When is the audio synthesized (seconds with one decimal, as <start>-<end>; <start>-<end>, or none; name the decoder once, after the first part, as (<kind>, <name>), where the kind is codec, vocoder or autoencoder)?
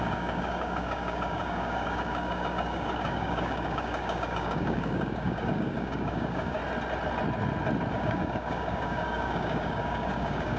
0.0-6.6 (codec, DAC); 7.9-10.6